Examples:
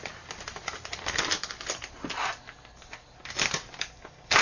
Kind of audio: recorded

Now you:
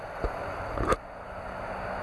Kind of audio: recorded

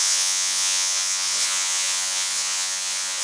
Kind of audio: remade